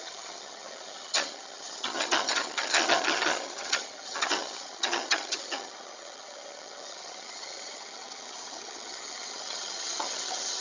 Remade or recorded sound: remade